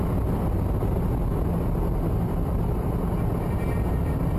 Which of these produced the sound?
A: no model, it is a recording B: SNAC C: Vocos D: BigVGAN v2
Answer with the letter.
A